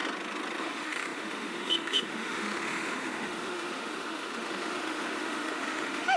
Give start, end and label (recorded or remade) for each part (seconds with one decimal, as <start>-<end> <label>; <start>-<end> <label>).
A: 0.0-0.6 recorded; 0.6-6.2 remade